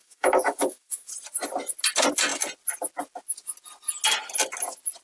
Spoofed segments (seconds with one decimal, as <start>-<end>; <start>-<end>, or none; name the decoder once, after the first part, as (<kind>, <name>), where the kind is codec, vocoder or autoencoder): 0.0-1.1 (autoencoder, DAC-VAE)